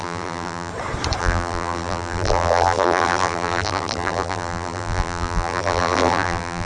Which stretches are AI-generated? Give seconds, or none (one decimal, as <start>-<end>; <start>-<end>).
0.0-0.7; 1.2-6.7